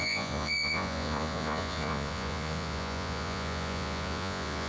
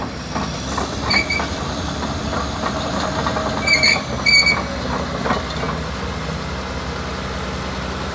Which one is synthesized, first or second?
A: first